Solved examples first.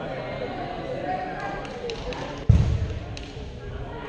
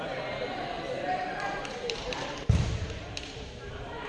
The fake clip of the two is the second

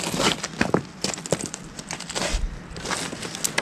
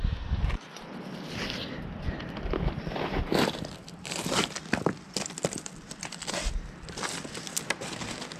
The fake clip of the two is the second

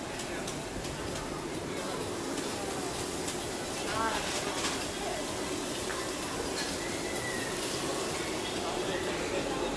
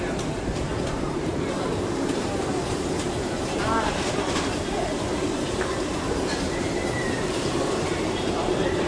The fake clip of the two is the second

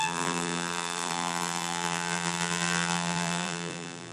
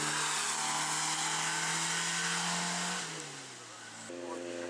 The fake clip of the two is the first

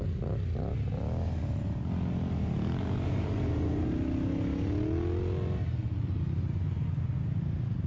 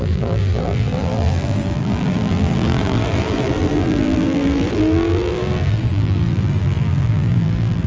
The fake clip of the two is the second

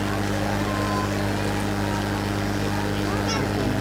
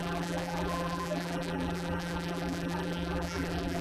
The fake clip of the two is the second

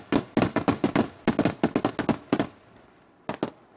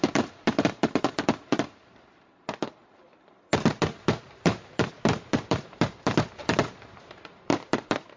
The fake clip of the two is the second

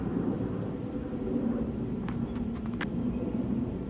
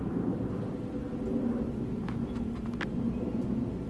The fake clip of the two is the first